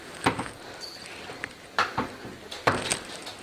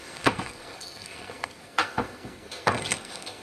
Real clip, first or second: first